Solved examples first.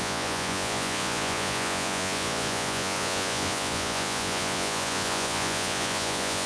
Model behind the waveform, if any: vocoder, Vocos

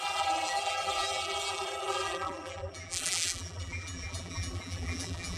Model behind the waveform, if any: vocoder, BigVGAN v2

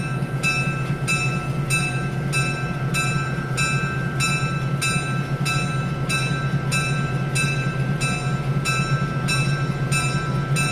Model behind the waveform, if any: none